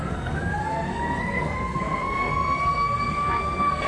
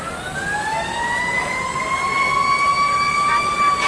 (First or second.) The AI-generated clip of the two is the first